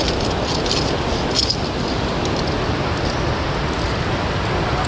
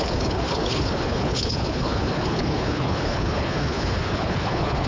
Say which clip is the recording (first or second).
first